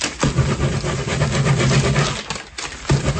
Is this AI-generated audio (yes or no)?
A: no